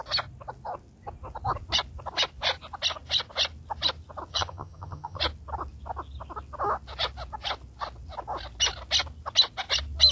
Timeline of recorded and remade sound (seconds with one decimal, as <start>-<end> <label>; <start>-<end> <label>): 0.0-4.3 recorded; 4.3-5.2 remade; 5.2-10.1 recorded